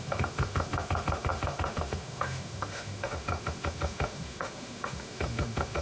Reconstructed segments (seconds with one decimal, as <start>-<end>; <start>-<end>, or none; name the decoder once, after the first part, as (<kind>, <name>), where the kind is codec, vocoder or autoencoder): 0.0-5.8 (autoencoder, DAC-VAE)